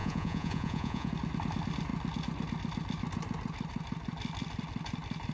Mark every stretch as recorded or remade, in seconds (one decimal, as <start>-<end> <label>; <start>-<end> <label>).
0.0-1.1 remade; 1.1-5.3 recorded